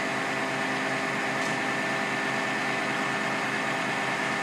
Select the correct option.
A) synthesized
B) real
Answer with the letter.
B